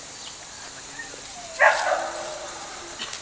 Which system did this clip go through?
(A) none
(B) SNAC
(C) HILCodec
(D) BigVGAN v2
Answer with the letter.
A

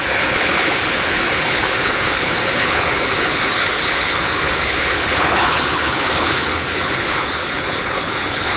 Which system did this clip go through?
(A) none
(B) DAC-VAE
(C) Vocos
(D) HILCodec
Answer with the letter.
D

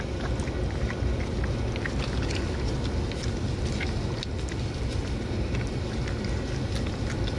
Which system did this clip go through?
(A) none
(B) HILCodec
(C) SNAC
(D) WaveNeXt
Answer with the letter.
A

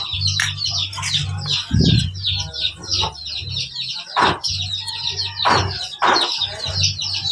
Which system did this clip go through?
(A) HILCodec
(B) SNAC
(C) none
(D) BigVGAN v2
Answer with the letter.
C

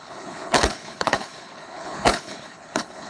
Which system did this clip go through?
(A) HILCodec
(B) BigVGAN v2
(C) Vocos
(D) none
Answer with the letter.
A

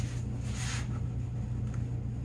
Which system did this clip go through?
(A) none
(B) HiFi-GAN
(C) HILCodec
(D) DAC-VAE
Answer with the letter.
A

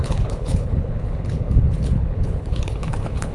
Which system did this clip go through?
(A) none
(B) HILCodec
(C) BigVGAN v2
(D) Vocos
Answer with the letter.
B